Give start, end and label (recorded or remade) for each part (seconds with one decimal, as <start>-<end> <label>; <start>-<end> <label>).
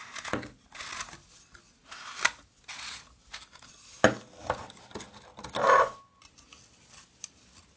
0.0-7.8 recorded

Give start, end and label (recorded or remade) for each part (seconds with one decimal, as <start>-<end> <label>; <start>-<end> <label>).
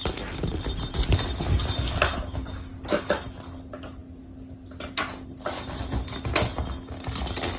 0.0-7.6 recorded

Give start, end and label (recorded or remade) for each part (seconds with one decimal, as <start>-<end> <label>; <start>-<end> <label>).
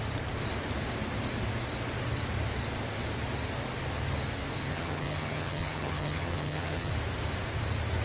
0.0-4.7 recorded; 4.7-6.9 remade; 6.9-8.0 recorded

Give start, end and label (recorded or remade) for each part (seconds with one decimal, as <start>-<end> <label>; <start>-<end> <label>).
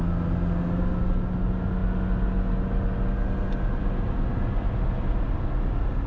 0.0-6.1 recorded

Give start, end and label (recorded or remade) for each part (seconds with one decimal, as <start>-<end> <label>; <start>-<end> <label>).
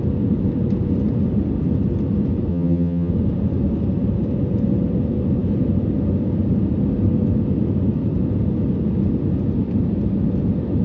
0.0-2.5 recorded; 2.5-3.1 remade; 3.1-10.8 recorded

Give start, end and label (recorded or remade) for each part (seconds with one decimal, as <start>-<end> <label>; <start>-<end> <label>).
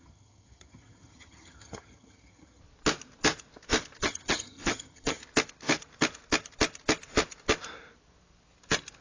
0.0-2.6 remade; 2.6-4.0 recorded; 4.0-5.2 remade; 5.2-9.0 recorded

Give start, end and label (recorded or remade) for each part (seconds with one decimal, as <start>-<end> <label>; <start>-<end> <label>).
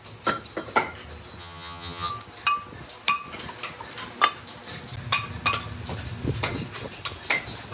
0.0-1.4 recorded; 1.4-2.1 remade; 2.1-7.7 recorded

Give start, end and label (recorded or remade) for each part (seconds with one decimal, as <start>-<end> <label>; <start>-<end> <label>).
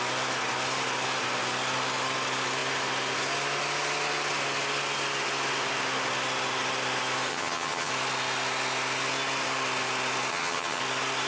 0.0-7.3 recorded; 7.3-7.9 remade; 7.9-10.3 recorded; 10.3-10.8 remade; 10.8-11.3 recorded